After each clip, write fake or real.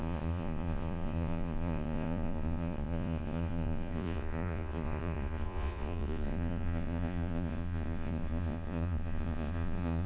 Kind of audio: fake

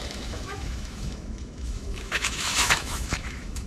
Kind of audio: fake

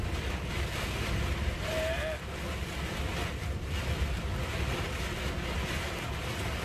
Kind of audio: real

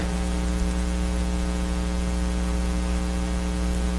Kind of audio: real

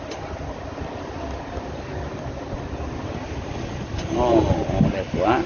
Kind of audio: real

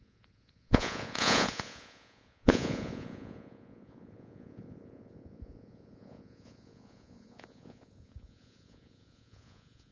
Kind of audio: fake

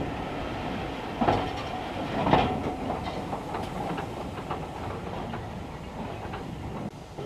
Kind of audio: real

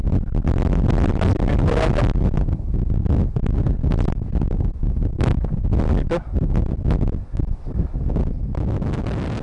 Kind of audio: real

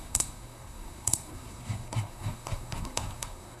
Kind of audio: fake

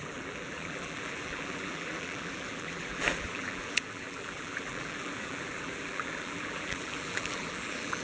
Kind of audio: fake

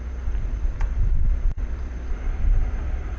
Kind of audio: fake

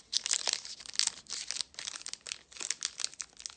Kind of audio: real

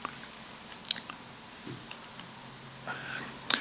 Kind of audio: real